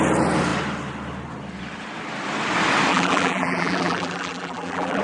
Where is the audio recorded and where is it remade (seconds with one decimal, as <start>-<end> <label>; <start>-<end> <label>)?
0.0-2.9 recorded; 2.9-5.0 remade